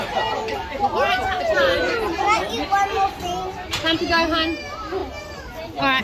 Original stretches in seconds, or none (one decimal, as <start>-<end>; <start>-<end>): 0.0-6.0